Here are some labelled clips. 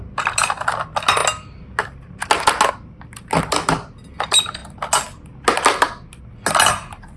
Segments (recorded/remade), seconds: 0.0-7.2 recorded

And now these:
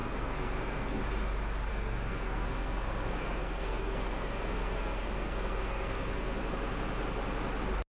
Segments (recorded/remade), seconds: 0.0-1.0 remade; 1.0-1.7 recorded; 1.7-6.4 remade; 6.4-7.9 recorded

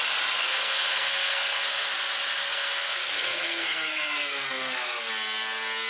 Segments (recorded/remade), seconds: 0.0-0.4 recorded; 0.4-1.9 remade; 1.9-2.4 recorded; 2.4-5.1 remade; 5.1-5.9 recorded

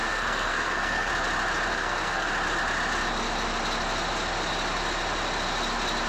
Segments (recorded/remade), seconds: 0.0-1.1 remade; 1.1-1.7 recorded; 1.7-2.3 remade; 2.3-6.1 recorded